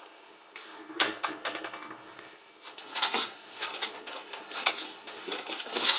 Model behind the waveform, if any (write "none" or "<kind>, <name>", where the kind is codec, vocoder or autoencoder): codec, SNAC